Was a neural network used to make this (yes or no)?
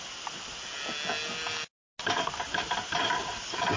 no